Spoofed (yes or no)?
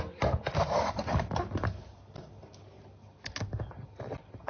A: no